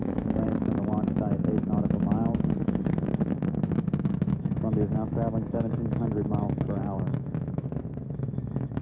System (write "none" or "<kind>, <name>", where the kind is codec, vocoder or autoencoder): autoencoder, DAC-VAE